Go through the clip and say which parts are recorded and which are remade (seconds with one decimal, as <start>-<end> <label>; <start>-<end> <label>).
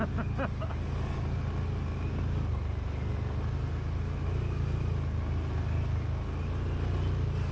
0.0-7.5 recorded